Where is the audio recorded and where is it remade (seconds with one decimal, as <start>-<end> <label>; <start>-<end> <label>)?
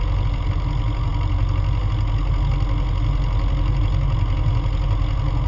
0.0-5.5 recorded